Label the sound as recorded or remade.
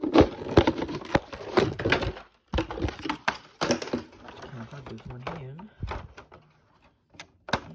recorded